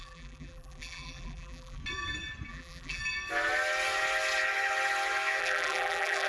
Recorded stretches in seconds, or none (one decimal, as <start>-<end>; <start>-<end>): 1.8-2.5; 3.0-5.4